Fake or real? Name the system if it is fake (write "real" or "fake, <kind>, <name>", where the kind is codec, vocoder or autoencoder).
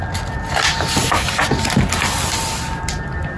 real